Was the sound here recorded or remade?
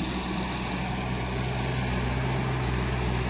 recorded